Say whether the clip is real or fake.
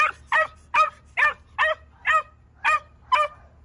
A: real